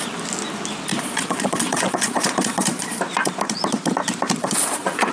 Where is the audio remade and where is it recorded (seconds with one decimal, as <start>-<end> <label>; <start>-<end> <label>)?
0.0-0.9 recorded; 0.9-3.0 remade; 3.0-4.4 recorded; 4.4-5.1 remade